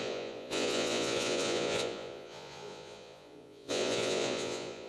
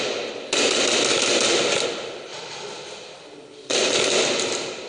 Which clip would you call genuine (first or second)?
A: second